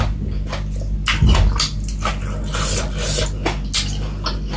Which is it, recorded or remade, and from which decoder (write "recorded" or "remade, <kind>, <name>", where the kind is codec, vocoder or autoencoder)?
recorded